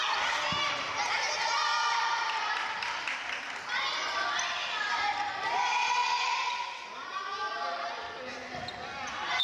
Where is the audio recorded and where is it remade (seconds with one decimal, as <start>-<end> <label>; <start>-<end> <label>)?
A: 0.0-9.4 recorded